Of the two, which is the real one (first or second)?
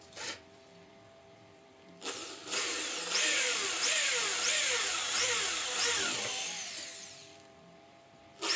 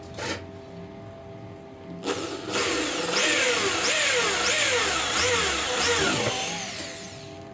second